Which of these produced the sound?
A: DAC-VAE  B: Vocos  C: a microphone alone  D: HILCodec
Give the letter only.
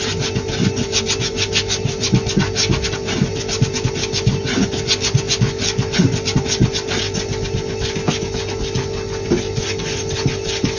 C